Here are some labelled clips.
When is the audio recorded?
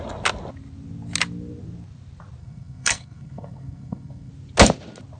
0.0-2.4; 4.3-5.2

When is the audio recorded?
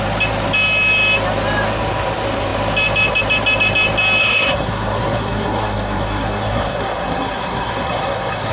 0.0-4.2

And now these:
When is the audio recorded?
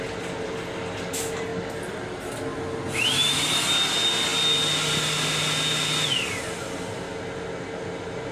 0.0-8.3